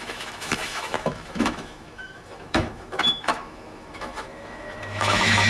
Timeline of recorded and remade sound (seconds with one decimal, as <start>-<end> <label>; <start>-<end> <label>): 0.0-5.5 remade